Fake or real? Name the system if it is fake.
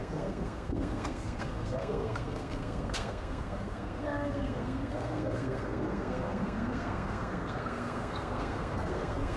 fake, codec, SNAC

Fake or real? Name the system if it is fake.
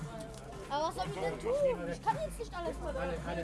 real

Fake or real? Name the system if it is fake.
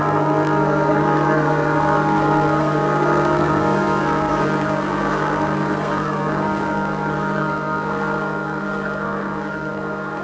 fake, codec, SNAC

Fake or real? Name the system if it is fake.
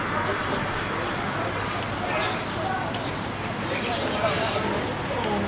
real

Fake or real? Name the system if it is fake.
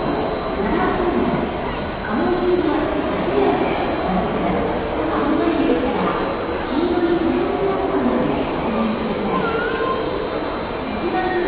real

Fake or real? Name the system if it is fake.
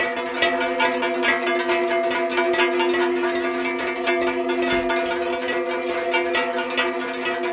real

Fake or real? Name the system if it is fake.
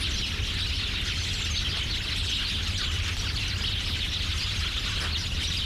real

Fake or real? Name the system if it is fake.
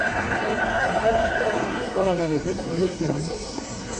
fake, codec, SNAC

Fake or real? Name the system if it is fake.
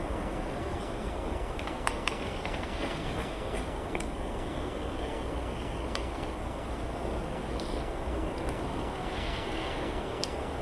fake, codec, SNAC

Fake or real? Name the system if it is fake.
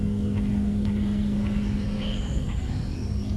fake, codec, SNAC